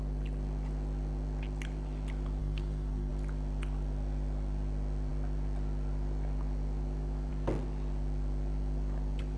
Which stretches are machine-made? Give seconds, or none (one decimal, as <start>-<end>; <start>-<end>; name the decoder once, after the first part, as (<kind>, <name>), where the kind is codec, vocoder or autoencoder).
2.4-3.1 (codec, SNAC)